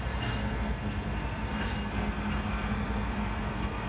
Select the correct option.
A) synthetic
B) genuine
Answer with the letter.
A